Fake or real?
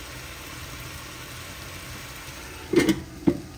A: real